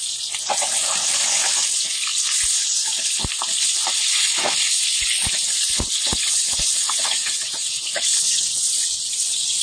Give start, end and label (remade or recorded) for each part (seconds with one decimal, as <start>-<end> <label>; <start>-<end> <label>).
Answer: 0.0-6.0 recorded; 6.0-9.6 remade